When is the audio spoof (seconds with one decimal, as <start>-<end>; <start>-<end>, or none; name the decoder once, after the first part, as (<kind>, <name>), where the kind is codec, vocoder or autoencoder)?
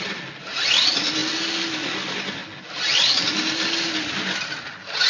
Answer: none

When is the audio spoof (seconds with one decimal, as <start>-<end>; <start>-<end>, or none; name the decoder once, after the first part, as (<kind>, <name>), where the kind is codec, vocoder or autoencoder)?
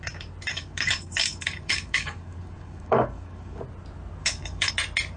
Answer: 0.5-3.6 (codec, DAC); 4.2-4.7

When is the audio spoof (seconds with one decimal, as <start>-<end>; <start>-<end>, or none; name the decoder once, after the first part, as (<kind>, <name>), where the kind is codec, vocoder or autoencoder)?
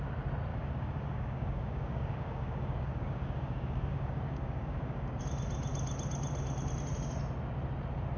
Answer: 0.5-5.2 (codec, DAC)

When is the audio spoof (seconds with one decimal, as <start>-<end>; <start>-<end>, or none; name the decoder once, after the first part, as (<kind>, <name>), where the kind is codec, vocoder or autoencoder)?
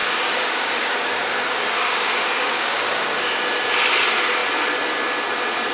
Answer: 0.0-3.4 (codec, DAC)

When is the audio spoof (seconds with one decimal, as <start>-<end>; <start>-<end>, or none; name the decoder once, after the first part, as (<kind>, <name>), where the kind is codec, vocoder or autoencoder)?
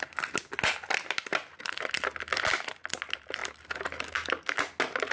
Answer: none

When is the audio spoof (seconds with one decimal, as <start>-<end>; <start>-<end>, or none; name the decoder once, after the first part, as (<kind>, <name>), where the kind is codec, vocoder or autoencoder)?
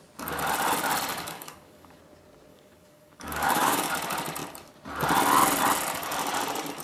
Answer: 1.1-2.0 (codec, DAC); 2.5-3.9